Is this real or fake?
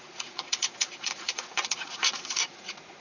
fake